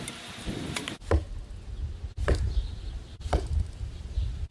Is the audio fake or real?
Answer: real